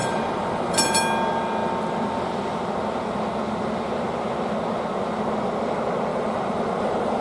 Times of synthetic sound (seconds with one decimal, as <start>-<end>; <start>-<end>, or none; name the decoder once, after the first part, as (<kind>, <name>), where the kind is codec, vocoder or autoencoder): 0.0-1.0 (vocoder, BigVGAN v2); 6.1-7.2